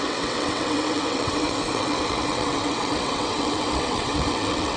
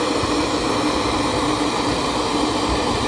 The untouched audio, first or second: second